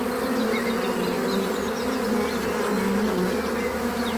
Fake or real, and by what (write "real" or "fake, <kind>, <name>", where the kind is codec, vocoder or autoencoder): real